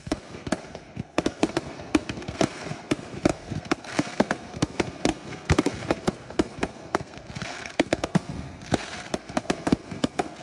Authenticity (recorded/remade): remade